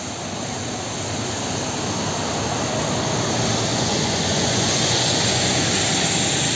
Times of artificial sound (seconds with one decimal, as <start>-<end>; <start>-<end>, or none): 3.7-5.8